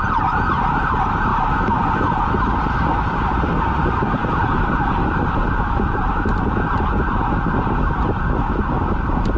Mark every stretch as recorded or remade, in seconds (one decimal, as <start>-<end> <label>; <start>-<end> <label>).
0.0-9.4 recorded